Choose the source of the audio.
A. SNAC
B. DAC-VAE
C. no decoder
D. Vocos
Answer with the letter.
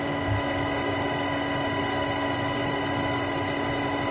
C